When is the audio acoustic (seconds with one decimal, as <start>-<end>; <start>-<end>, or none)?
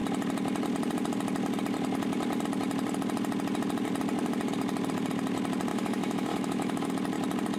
0.0-5.7; 6.9-7.6